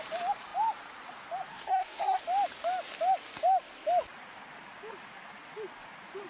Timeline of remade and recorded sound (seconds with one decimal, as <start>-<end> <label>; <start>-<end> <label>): 0.0-1.5 recorded; 1.5-2.2 remade; 2.2-6.3 recorded